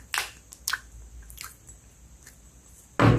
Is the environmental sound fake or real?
real